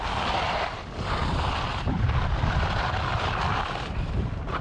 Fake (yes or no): no